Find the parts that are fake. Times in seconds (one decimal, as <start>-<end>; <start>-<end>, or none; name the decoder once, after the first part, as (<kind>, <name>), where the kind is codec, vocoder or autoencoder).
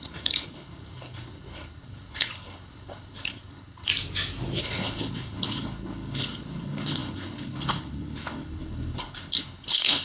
0.0-3.9 (codec, HILCodec); 4.6-10.0